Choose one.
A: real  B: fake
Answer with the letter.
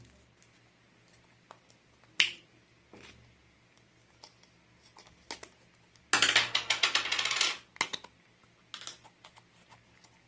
A